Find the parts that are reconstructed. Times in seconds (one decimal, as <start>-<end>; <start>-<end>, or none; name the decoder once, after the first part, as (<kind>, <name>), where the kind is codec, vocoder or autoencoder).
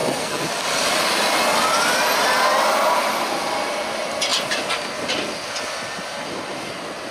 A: 0.0-0.5 (codec, SNAC)